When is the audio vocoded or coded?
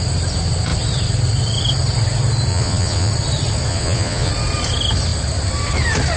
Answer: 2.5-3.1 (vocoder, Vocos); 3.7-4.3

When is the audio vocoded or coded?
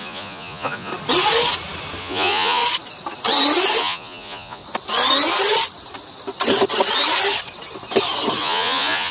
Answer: 0.0-0.9 (vocoder, Vocos); 2.0-2.6; 3.8-4.6; 8.4-9.1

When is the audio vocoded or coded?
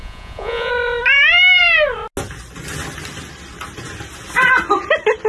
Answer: 0.0-0.7 (vocoder, Vocos)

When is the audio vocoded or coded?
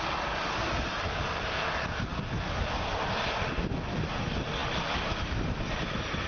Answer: none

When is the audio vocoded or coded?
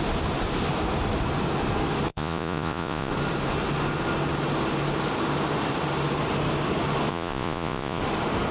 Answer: 2.1-3.1 (vocoder, Vocos); 7.1-8.0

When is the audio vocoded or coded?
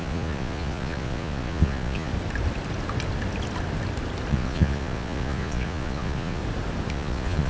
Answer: 0.0-2.1 (vocoder, Vocos); 4.3-6.4; 6.9-7.5